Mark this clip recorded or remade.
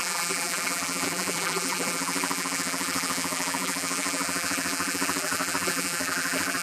remade